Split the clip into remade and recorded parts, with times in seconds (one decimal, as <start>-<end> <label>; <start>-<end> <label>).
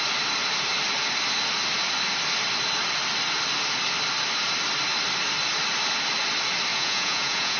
0.0-6.7 recorded; 6.7-7.6 remade